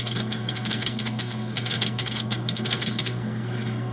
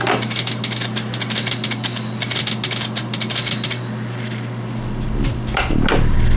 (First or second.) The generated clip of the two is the first